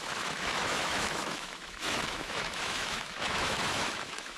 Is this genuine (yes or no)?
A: no